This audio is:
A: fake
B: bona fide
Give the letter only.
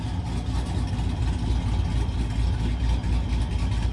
B